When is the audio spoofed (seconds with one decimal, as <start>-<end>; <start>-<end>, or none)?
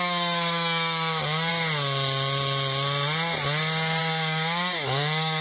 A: 0.0-1.5; 4.0-5.4